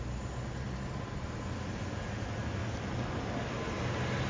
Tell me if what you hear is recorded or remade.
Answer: recorded